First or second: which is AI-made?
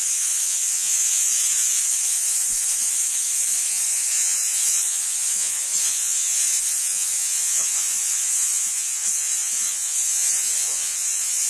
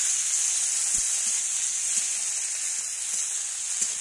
first